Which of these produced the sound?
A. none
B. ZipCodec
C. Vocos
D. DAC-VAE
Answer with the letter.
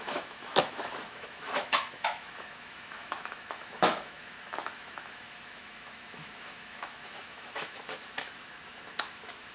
D